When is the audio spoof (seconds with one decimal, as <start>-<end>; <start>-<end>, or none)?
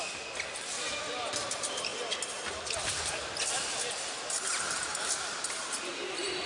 none